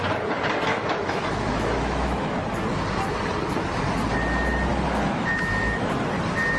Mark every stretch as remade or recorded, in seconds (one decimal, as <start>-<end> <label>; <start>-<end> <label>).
0.0-0.7 recorded; 0.7-2.3 remade; 2.3-4.7 recorded; 4.7-5.9 remade; 5.9-6.6 recorded